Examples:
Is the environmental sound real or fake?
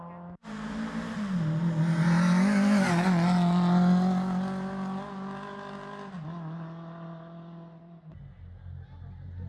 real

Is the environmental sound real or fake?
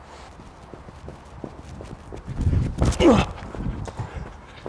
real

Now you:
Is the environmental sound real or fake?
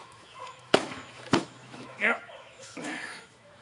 fake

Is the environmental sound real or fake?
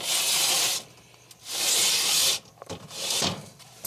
real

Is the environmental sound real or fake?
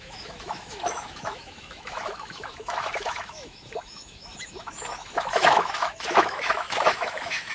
fake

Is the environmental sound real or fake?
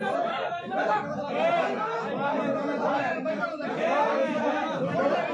real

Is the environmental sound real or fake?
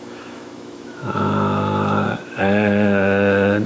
fake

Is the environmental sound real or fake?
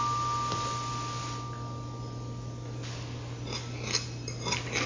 real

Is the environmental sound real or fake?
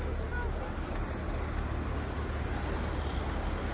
real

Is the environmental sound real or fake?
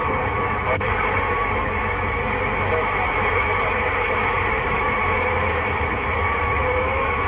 fake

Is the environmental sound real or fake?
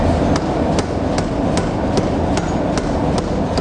real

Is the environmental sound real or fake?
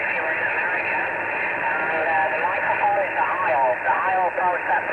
real